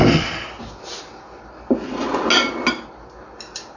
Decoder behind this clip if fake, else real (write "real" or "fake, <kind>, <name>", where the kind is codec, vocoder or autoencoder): real